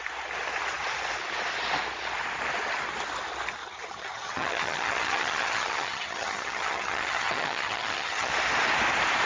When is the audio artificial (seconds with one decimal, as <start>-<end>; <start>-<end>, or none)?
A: 3.6-8.3